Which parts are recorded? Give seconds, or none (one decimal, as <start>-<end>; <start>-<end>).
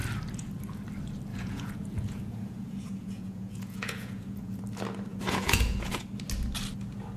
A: 0.0-1.3; 4.6-5.1; 6.0-7.2